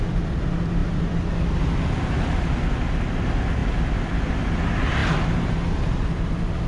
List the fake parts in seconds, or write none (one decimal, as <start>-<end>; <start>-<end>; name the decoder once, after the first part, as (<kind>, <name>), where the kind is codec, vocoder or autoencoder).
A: none